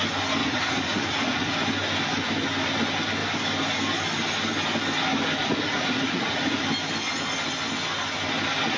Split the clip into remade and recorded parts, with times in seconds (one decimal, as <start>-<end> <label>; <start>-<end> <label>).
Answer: 0.0-0.4 recorded; 0.4-1.5 remade; 1.5-5.4 recorded; 5.4-6.6 remade; 6.6-8.8 recorded